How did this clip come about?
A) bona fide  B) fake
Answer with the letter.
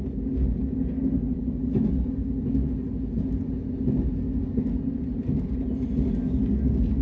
A